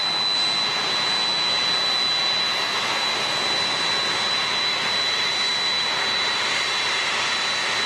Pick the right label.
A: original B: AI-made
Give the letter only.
A